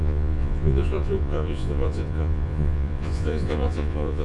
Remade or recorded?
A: remade